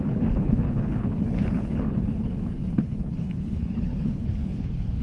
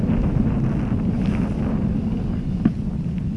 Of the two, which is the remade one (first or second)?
first